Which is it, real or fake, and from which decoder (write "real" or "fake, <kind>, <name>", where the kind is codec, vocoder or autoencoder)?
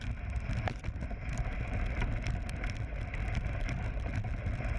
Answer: real